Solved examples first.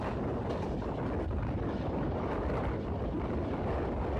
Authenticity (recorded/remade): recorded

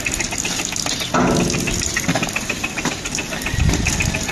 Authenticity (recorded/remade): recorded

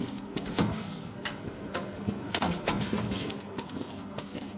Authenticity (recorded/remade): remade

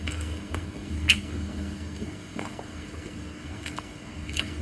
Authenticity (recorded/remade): remade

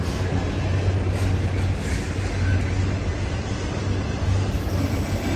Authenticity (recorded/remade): recorded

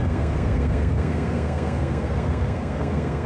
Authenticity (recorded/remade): remade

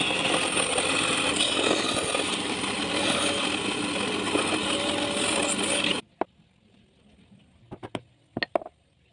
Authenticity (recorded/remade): recorded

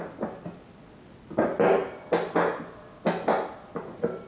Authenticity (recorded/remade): recorded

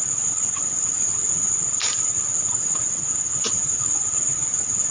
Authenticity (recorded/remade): recorded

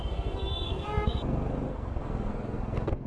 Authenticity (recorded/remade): remade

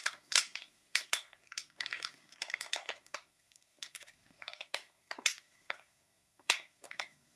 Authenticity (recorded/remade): remade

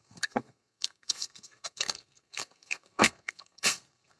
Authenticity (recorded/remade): remade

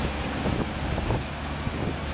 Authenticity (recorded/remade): recorded